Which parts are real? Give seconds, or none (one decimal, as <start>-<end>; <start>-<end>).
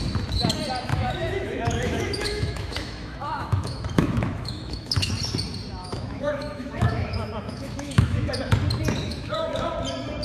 0.0-0.9; 5.1-5.8; 8.3-9.0; 9.7-10.2